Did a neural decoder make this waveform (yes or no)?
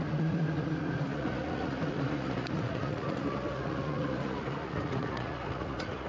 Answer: yes